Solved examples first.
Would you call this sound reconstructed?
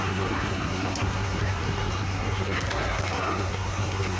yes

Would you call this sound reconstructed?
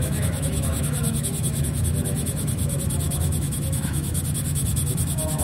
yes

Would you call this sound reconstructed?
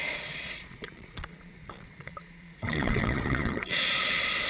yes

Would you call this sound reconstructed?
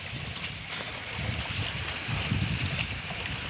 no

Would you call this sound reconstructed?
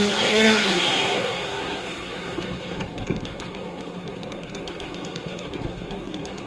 yes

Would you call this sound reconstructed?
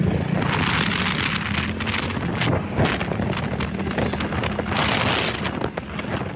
no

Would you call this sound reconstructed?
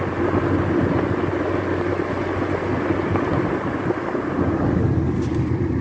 no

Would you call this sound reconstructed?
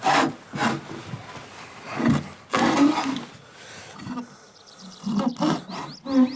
no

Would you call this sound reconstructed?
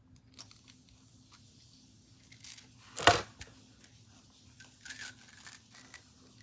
no